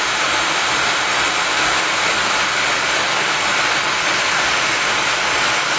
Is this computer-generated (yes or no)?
no